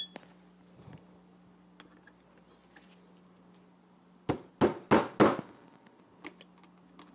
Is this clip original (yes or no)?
yes